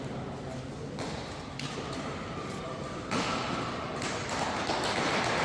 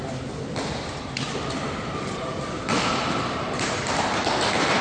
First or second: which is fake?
second